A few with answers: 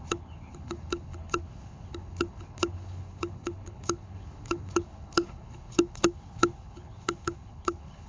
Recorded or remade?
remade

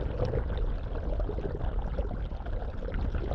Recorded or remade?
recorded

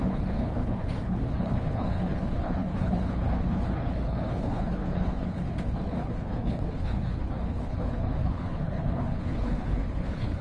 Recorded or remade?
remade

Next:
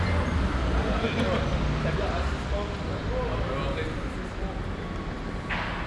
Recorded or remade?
recorded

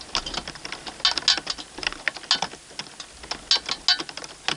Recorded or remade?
recorded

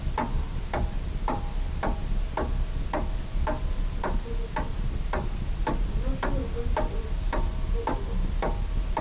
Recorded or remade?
recorded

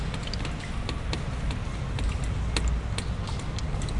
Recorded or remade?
recorded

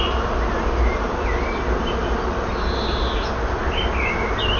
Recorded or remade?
recorded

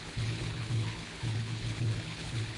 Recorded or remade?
remade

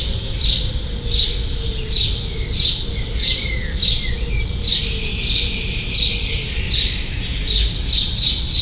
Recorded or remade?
recorded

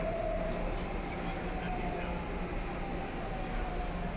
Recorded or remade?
recorded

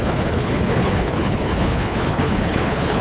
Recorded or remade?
remade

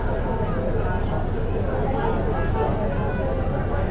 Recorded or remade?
recorded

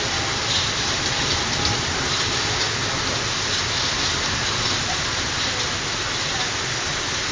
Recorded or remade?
recorded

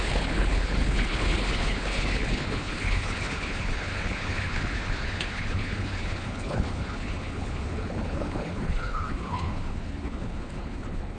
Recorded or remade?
remade